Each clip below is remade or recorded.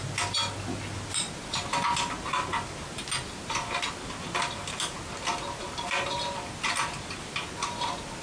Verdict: recorded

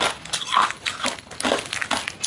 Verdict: recorded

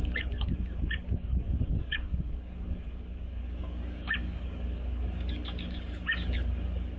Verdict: remade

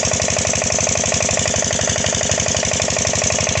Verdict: recorded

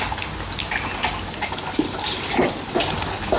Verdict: recorded